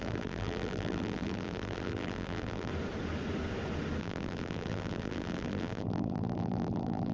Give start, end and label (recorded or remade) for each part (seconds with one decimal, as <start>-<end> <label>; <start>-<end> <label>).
0.0-2.7 remade; 2.7-4.0 recorded; 4.0-7.1 remade